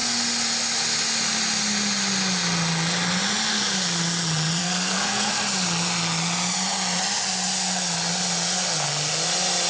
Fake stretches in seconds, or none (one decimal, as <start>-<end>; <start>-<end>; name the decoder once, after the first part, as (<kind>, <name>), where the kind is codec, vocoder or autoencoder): 4.6-5.3 (codec, SNAC)